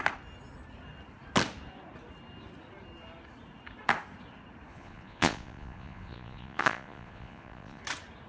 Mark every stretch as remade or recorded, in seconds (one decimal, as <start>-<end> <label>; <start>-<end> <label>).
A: 0.0-4.7 recorded; 4.7-7.8 remade; 7.8-8.3 recorded